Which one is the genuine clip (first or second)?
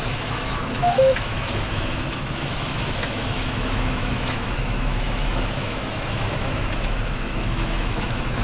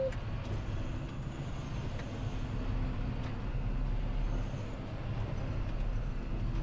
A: second